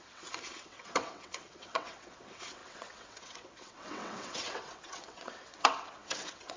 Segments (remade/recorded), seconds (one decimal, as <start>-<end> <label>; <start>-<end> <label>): 0.0-6.6 remade